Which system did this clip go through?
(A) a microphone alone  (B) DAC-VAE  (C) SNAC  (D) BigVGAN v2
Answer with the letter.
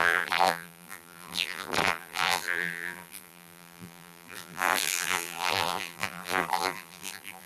D